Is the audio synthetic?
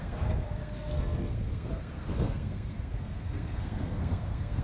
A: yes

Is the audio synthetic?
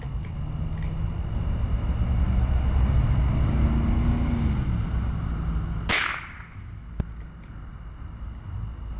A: no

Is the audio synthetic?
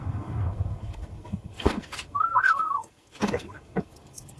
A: yes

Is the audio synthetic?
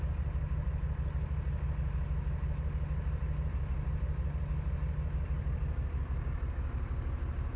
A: no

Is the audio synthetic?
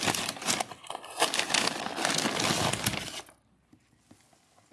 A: no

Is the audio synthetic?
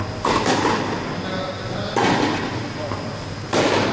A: no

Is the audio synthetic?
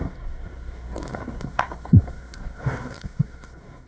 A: yes